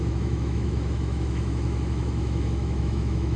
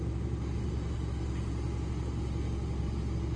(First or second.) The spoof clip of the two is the first